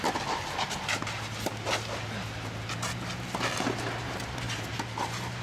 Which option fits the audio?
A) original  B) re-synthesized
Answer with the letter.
A